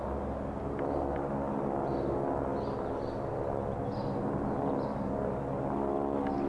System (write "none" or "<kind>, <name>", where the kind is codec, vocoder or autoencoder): none